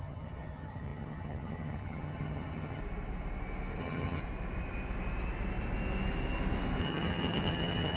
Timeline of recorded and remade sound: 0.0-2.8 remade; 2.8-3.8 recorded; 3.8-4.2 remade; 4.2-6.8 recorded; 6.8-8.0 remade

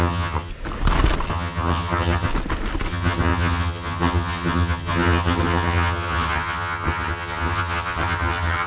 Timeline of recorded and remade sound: 0.0-0.5 remade; 0.5-1.3 recorded; 1.3-2.3 remade; 2.3-2.9 recorded; 2.9-8.7 remade

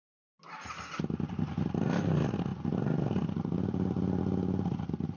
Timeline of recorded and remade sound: 0.0-5.2 recorded

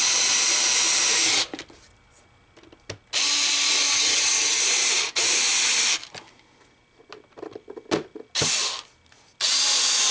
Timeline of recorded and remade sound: 0.0-3.9 recorded; 3.9-4.6 remade; 4.6-10.1 recorded

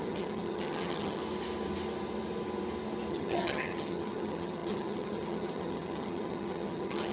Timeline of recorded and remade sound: 0.0-1.2 remade; 1.2-3.1 recorded; 3.1-7.1 remade

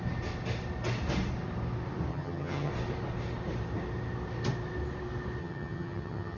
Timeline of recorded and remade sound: 0.0-2.1 recorded; 2.1-2.7 remade; 2.7-5.4 recorded; 5.4-6.4 remade